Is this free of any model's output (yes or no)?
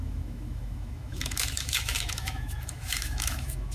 no